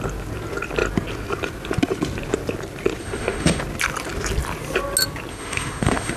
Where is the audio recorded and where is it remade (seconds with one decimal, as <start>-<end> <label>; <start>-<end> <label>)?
0.0-3.0 recorded; 3.0-3.6 remade; 3.6-5.3 recorded; 5.3-6.2 remade